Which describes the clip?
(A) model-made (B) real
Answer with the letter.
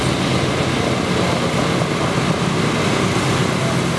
B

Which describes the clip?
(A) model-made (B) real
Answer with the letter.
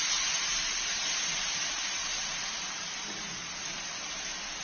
A